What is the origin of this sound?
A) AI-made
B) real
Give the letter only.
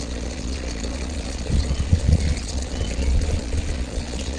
A